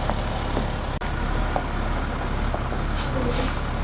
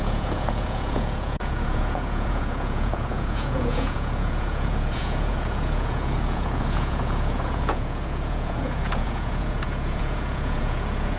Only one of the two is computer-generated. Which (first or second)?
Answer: second